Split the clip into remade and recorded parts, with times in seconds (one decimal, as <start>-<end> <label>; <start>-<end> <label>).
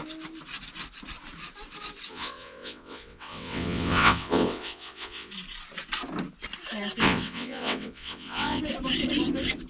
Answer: 0.0-2.1 recorded; 2.1-5.3 remade; 5.3-7.0 recorded; 7.0-8.6 remade; 8.6-9.7 recorded